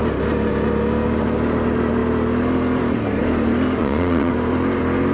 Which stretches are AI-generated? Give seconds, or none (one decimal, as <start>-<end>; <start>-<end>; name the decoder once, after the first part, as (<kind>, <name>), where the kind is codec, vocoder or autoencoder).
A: 3.8-4.3 (vocoder, Vocos)